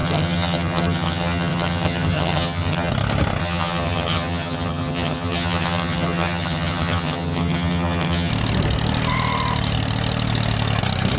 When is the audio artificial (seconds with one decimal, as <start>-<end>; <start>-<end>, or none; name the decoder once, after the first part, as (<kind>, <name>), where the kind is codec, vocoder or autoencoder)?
0.0-2.9 (vocoder, HiFi-GAN); 3.4-8.3